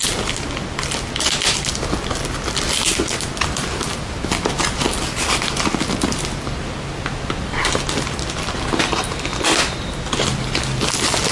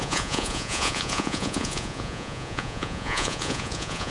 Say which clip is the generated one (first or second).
second